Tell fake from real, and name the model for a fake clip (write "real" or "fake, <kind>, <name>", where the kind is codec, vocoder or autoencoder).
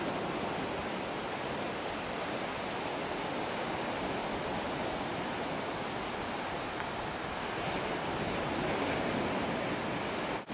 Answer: real